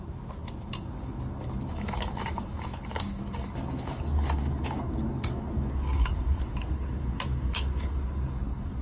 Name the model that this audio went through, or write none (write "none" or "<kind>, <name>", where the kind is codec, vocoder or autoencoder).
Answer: codec, DAC